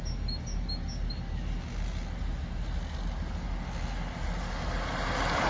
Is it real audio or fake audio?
real